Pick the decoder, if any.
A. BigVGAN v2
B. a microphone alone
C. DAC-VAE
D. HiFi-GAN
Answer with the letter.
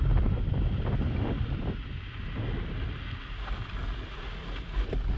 B